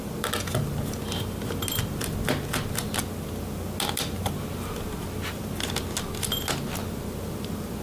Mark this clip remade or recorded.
recorded